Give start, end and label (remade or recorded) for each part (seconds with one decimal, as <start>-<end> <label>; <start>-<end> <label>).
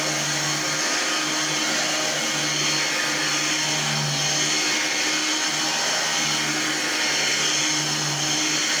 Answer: 0.0-8.8 recorded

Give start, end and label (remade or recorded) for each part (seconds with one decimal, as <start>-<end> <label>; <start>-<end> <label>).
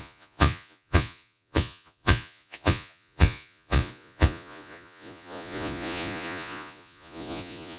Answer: 0.0-7.8 remade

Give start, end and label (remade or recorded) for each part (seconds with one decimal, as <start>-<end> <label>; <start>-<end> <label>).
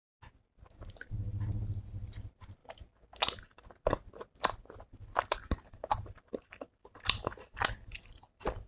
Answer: 0.0-8.7 recorded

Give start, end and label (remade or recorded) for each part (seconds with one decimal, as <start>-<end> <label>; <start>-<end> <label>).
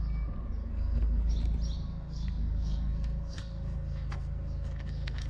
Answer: 0.0-0.6 recorded; 0.6-1.3 remade; 1.3-1.9 recorded; 1.9-5.3 remade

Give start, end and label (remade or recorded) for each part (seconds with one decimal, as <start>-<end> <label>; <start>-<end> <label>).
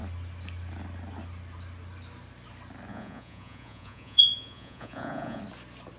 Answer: 0.0-2.9 recorded; 2.9-5.4 remade; 5.4-6.0 recorded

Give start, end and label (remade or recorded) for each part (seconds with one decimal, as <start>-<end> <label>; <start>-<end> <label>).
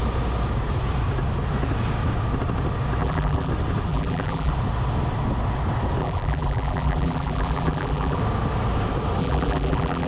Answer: 0.0-3.0 recorded; 3.0-3.5 remade; 3.5-3.9 recorded; 3.9-4.5 remade; 4.5-6.0 recorded; 6.0-8.2 remade; 8.2-9.2 recorded; 9.2-10.1 remade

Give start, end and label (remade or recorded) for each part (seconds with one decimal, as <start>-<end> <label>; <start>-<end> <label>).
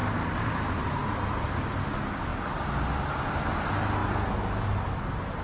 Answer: 0.0-5.4 recorded